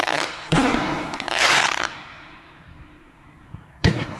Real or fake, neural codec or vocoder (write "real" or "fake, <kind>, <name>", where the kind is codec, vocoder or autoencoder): fake, codec, SNAC